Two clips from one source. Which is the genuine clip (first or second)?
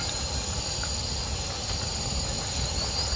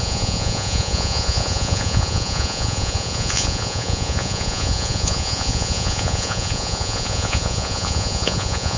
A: first